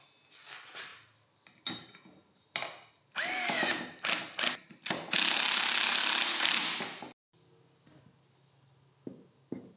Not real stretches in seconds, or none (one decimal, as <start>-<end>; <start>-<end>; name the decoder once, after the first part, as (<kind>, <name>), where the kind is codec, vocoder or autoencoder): none